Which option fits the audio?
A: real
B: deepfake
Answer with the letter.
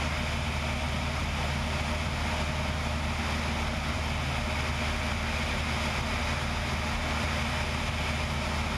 A